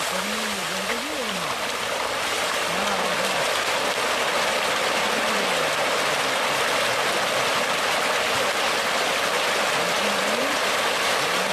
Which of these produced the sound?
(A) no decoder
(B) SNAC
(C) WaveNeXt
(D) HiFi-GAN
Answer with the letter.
A